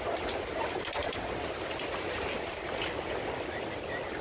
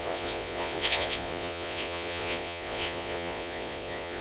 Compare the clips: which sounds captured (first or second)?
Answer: first